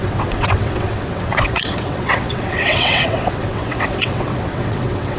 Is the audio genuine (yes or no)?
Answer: no